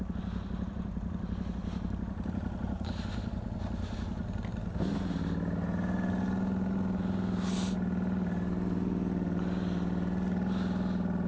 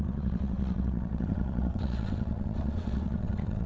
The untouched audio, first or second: first